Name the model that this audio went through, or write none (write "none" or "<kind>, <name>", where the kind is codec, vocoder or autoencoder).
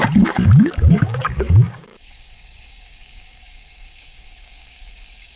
codec, DAC